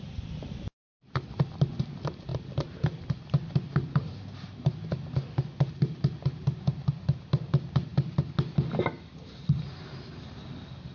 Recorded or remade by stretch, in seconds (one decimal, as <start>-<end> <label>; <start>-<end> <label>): 0.0-10.9 recorded